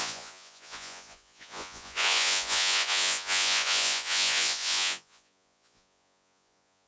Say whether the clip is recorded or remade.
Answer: remade